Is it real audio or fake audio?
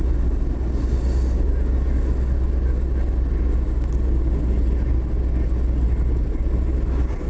real